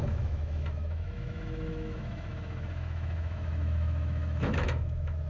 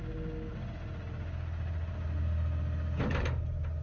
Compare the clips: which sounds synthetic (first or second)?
first